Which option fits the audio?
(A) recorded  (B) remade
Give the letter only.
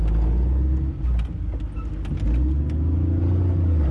A